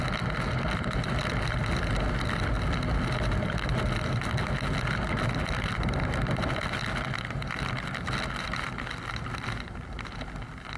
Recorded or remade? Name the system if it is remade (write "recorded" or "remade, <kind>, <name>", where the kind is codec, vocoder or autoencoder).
recorded